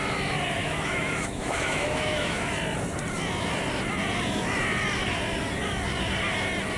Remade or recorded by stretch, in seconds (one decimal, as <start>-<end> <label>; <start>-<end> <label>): 0.0-0.6 recorded; 0.6-2.5 remade; 2.5-6.8 recorded